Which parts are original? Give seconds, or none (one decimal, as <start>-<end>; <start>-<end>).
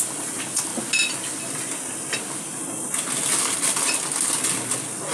0.0-5.1